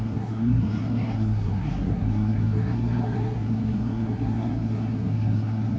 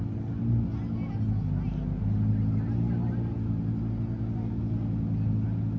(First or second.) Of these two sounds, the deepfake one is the first